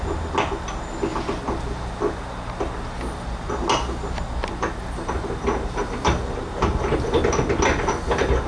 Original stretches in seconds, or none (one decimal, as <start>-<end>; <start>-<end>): 0.0-8.5